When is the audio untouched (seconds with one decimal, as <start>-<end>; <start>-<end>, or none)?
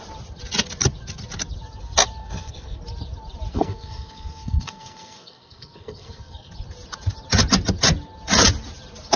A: 0.0-2.2; 2.8-3.5; 6.5-9.2